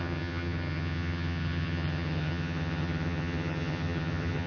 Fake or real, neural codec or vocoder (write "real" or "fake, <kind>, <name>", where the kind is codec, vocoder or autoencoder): fake, vocoder, HiFi-GAN